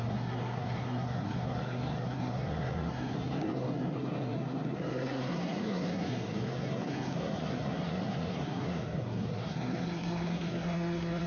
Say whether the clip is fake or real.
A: fake